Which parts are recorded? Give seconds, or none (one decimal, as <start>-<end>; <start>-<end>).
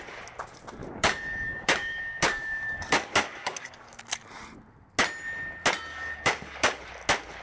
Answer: 0.0-0.8; 4.0-5.9; 6.8-7.4